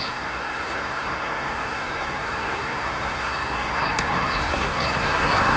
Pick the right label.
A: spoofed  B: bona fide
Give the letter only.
A